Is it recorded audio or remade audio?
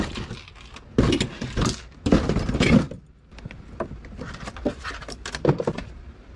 recorded